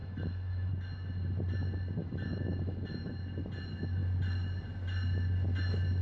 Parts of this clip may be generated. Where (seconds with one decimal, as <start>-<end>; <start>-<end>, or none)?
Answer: 0.0-0.7; 2.0-3.1